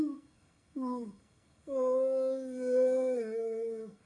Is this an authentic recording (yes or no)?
no